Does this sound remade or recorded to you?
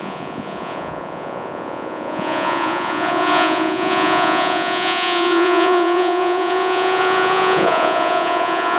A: remade